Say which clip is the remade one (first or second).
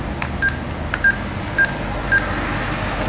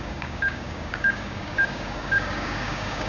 second